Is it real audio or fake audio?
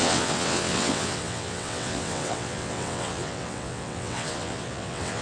fake